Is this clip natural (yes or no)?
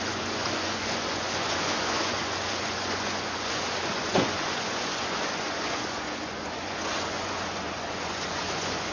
no